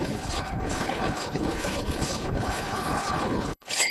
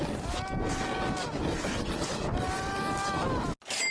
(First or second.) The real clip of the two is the second